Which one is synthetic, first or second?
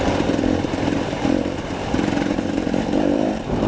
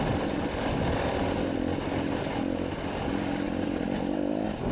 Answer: first